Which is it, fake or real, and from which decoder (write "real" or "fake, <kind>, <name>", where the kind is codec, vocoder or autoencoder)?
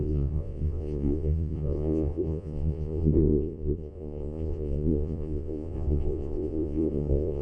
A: fake, vocoder, Vocos